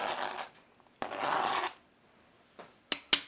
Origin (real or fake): real